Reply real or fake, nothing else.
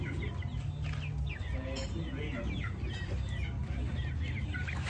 real